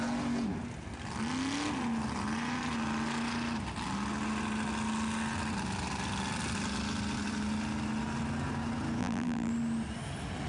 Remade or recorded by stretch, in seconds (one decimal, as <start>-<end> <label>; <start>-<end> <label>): 0.0-9.0 recorded; 9.0-9.5 remade; 9.5-10.5 recorded